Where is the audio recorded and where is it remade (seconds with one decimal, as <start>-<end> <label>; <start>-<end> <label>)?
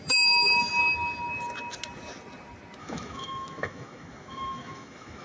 0.0-0.8 remade; 0.8-2.8 recorded; 2.8-5.2 remade